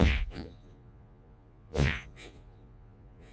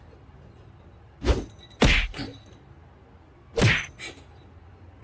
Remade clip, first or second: first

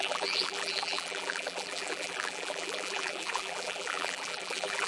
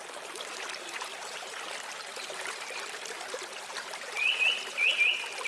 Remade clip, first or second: first